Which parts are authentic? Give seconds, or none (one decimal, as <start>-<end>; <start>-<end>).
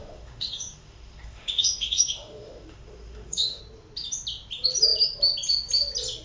3.6-6.2